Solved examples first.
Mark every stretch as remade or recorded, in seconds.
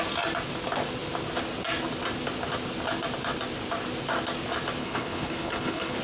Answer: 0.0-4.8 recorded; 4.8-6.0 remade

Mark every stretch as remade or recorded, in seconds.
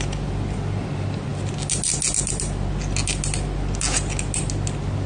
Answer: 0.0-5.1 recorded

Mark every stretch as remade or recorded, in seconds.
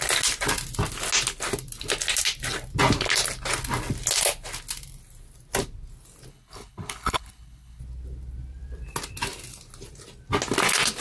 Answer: 0.0-6.3 recorded; 6.3-7.8 remade; 7.8-11.0 recorded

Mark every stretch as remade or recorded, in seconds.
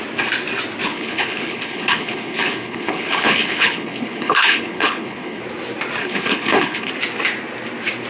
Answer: 0.0-0.9 recorded; 0.9-5.4 remade; 5.4-6.0 recorded; 6.0-6.9 remade; 6.9-8.1 recorded